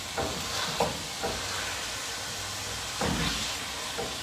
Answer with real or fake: real